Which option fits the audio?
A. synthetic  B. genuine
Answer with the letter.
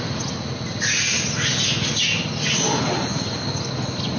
B